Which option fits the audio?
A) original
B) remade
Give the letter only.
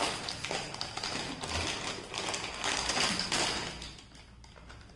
A